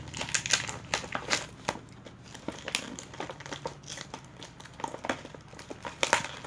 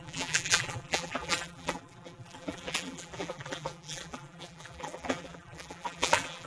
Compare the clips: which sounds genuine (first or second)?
first